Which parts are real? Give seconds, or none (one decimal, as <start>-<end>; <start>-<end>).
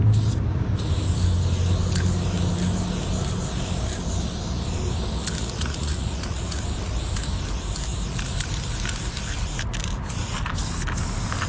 0.0-5.4; 6.6-11.5